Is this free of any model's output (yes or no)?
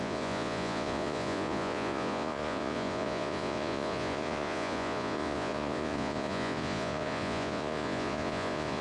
no